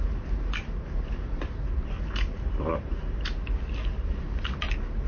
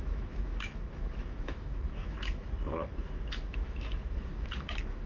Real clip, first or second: first